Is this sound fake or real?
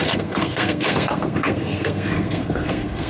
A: fake